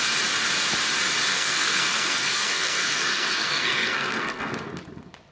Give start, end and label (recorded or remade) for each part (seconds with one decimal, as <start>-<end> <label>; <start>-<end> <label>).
0.0-1.3 recorded; 1.3-4.5 remade; 4.5-5.3 recorded